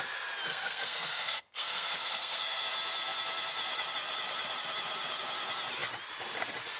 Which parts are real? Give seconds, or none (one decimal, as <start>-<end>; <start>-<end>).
0.0-0.5; 2.6-6.8